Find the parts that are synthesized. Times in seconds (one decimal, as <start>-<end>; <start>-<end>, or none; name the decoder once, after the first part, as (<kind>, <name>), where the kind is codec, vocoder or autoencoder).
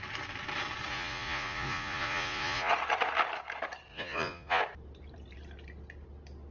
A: 0.9-2.7 (vocoder, Vocos); 3.9-4.6